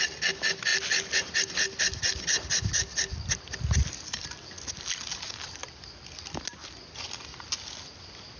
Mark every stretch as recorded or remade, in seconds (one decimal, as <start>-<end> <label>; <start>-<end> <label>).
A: 0.0-8.4 recorded